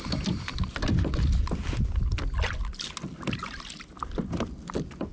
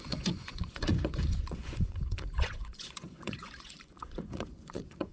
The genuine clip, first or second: first